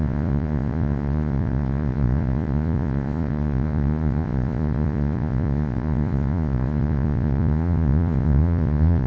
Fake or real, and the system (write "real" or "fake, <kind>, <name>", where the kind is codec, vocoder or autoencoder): fake, vocoder, Vocos